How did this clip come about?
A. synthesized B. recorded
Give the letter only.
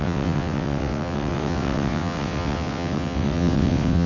A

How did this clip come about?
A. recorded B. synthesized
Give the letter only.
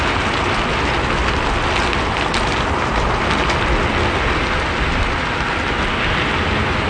A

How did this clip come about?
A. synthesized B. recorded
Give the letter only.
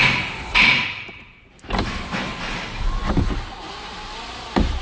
B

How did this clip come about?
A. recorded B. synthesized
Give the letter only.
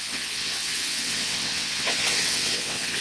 B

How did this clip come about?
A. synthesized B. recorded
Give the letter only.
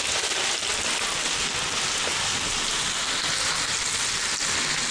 B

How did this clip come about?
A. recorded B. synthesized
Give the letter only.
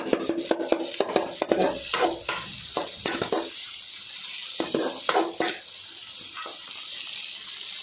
A